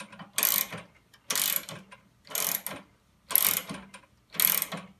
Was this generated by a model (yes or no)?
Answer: no